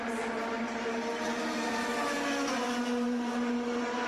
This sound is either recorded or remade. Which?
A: recorded